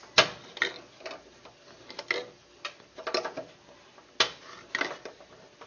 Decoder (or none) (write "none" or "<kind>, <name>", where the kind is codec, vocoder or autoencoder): none